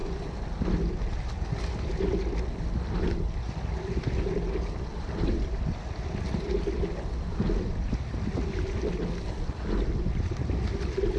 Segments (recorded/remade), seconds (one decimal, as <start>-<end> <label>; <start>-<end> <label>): 0.0-4.9 recorded; 4.9-5.6 remade; 5.6-11.2 recorded